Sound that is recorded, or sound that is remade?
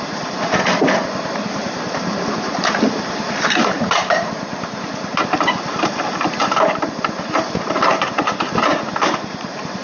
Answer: remade